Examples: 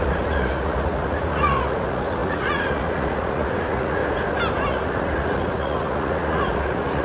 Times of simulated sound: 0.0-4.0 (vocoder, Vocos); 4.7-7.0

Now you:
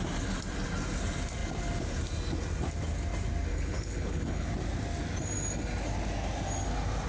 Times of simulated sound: 3.5-4.5 (codec, HILCodec)

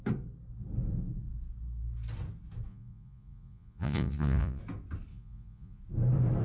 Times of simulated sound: 2.7-4.6 (vocoder, Vocos); 5.1-5.8

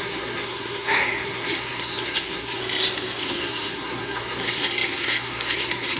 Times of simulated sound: 0.0-2.6 (codec, SNAC); 3.2-6.0

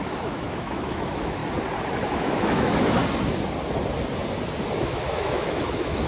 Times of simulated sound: 0.0-1.4 (autoencoder, DAC-VAE); 2.1-3.0; 4.8-6.1

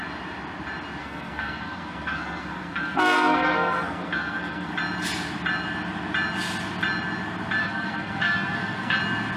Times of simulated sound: 1.0-4.7 (codec, SNAC); 7.6-9.0